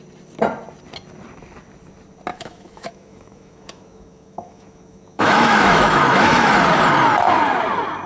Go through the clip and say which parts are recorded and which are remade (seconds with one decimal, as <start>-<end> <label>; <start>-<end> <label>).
0.0-2.3 recorded; 2.3-6.5 remade; 6.5-8.1 recorded

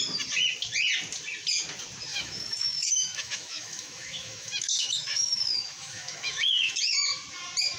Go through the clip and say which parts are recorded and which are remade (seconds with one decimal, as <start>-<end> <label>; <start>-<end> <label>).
0.0-2.1 recorded; 2.1-6.8 remade; 6.8-7.8 recorded

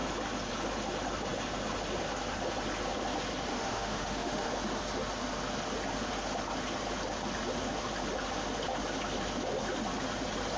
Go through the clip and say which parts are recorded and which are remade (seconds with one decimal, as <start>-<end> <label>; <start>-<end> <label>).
0.0-3.5 recorded; 3.5-4.5 remade; 4.5-10.6 recorded

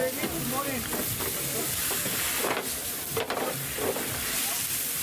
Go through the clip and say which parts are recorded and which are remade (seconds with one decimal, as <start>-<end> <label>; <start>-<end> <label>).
0.0-5.0 recorded

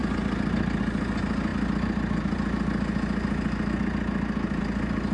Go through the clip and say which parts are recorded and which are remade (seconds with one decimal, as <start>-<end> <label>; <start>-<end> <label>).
0.0-5.1 recorded

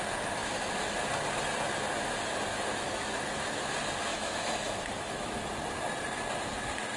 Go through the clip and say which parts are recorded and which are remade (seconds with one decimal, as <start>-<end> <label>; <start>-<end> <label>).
0.0-2.5 recorded; 2.5-3.4 remade; 3.4-4.1 recorded; 4.1-5.4 remade; 5.4-7.0 recorded

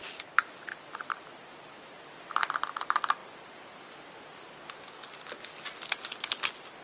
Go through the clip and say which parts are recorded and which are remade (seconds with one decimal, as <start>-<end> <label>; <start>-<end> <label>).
0.0-6.8 recorded